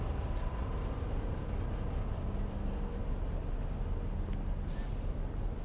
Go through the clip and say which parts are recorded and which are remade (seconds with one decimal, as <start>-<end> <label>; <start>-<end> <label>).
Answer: 0.0-5.6 recorded